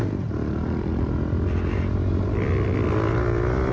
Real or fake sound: real